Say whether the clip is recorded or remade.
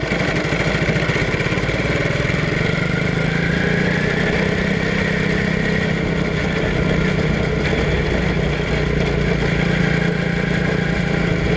recorded